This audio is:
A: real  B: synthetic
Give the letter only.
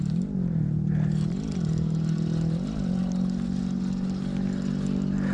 A